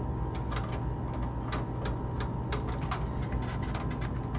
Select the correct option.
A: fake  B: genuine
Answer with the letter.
B